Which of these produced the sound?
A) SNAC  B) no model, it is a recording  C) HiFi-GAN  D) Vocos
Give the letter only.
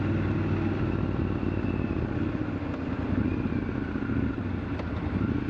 B